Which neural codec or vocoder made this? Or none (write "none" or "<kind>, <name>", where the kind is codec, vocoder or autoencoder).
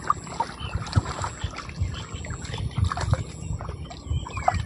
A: none